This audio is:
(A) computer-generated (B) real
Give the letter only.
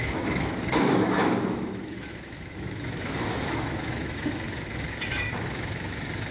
A